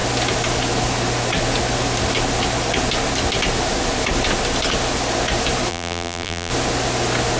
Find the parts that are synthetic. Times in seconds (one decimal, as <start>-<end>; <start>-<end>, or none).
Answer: 5.7-6.5